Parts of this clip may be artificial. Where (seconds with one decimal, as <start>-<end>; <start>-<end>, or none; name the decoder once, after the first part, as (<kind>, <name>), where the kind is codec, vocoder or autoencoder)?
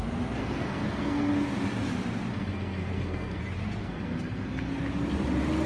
0.4-1.3 (codec, SNAC); 2.3-3.4; 3.8-4.7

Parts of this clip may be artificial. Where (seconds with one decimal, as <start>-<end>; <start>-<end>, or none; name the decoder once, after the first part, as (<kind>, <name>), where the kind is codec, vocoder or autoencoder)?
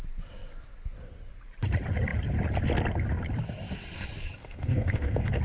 4.4-5.4 (codec, SNAC)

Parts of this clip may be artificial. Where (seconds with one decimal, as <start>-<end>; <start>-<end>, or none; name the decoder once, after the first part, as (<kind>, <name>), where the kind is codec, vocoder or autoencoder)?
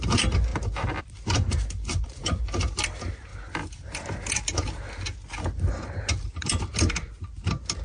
none